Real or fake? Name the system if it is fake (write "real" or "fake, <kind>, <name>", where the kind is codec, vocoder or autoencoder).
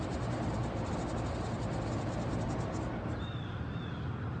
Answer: real